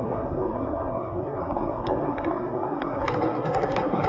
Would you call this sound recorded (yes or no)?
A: no